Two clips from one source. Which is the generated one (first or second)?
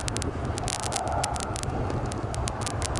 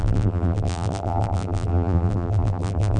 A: second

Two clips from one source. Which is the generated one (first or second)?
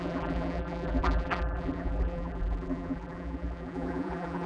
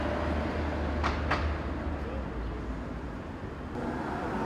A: first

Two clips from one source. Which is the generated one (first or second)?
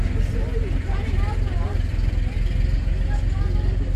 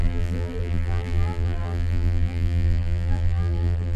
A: second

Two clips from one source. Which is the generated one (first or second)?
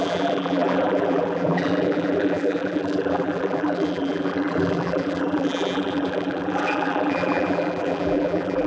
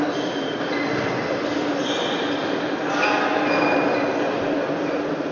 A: first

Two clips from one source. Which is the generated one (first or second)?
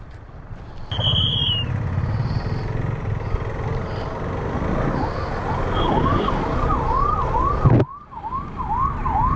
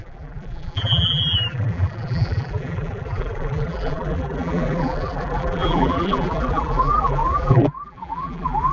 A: second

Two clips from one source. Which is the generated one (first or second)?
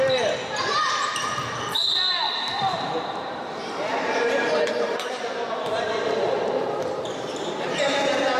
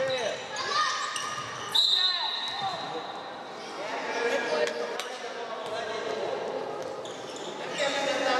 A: first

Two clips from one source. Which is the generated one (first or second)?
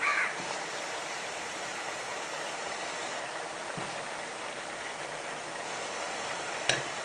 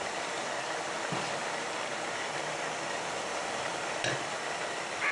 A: first